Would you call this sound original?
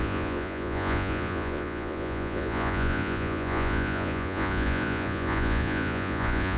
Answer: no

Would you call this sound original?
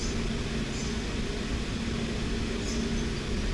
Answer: yes